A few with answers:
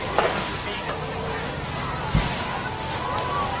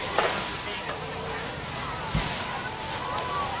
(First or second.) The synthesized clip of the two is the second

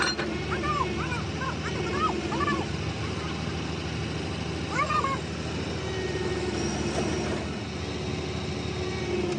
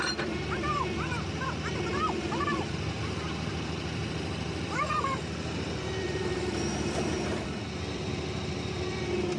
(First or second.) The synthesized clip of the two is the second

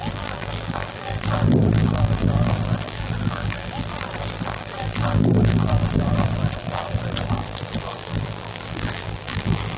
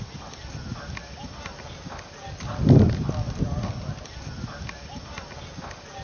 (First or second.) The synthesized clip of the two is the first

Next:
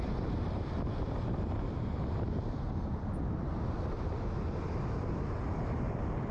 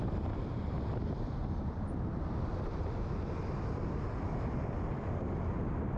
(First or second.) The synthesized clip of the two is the second